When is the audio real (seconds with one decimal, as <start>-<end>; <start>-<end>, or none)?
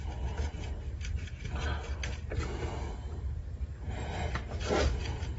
0.0-5.4